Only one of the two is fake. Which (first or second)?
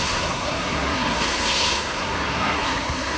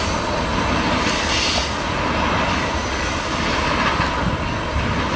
first